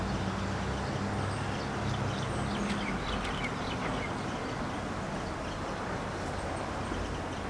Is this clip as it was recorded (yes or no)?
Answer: yes